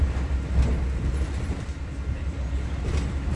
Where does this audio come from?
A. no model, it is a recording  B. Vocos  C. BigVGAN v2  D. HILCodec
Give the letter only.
A